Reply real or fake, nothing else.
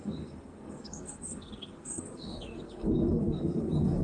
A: fake